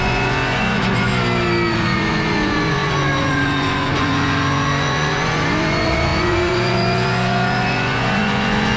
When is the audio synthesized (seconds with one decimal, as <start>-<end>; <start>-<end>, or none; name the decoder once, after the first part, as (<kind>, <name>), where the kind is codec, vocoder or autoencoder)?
0.0-1.1 (vocoder, Vocos); 1.7-8.8